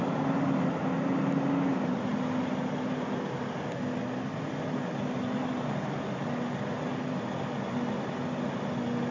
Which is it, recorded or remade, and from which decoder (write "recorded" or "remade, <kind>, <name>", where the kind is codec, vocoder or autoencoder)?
recorded